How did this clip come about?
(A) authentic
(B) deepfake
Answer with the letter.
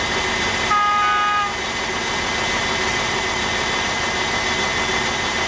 A